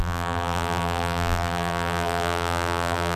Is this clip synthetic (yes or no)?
yes